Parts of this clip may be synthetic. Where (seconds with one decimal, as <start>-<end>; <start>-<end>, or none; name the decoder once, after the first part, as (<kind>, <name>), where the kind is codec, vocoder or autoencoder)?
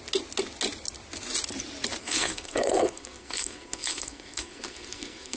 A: 2.0-5.4 (codec, SNAC)